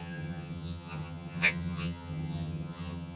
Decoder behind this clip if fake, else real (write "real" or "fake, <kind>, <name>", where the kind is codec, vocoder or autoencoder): fake, vocoder, HiFi-GAN